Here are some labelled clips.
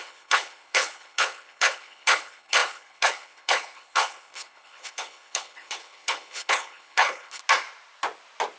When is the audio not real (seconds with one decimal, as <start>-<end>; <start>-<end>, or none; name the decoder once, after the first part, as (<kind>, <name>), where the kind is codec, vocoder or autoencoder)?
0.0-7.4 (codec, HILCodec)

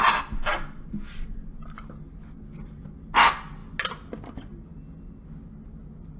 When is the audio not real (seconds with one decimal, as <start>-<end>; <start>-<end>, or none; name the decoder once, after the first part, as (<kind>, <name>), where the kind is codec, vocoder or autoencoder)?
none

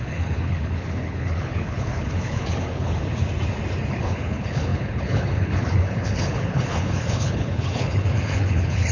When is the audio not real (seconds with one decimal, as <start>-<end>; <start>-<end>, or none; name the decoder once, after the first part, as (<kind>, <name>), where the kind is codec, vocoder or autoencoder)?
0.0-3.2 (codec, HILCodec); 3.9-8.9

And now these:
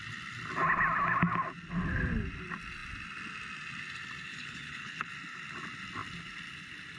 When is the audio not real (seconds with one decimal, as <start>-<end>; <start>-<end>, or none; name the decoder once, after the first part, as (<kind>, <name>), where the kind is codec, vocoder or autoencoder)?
4.3-5.1 (codec, HILCodec)

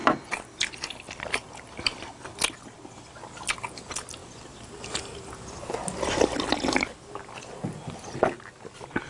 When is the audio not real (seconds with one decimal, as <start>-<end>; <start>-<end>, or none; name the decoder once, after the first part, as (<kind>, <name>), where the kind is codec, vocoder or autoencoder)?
none